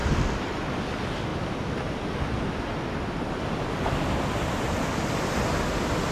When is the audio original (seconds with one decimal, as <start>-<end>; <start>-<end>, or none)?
0.0-6.1